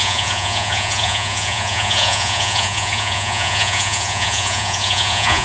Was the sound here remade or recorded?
remade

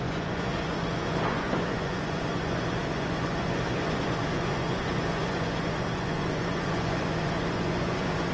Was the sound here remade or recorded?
remade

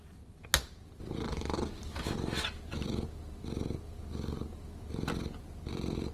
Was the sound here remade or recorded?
recorded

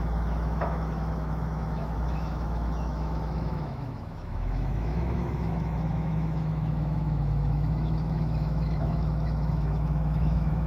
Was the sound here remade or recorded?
remade